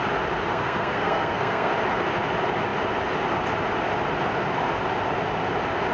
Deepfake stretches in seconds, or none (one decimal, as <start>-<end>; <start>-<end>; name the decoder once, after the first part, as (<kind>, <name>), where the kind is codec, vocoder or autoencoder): 0.5-1.7 (codec, SNAC)